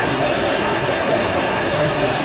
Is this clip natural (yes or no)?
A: no